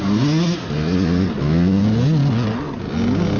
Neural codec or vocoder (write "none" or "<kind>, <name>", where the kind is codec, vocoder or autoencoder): none